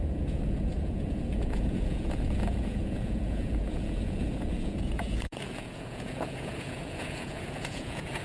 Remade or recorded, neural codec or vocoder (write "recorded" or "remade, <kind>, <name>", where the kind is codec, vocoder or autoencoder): remade, vocoder, Vocos